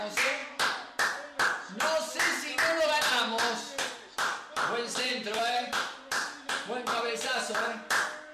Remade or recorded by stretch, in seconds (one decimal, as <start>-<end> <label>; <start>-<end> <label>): 0.0-4.1 recorded; 4.1-7.9 remade; 7.9-8.3 recorded